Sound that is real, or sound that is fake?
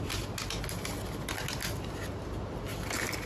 real